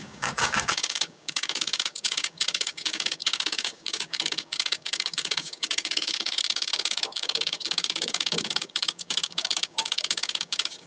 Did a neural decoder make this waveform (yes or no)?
yes